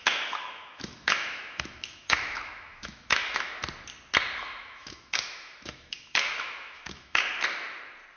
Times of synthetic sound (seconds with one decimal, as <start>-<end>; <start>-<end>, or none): 0.0-3.6; 4.4-7.3